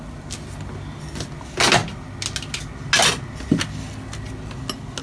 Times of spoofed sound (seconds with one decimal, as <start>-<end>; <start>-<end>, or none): none